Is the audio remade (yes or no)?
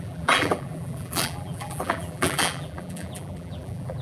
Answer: yes